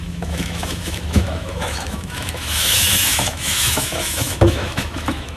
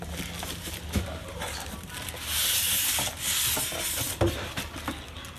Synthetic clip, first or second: first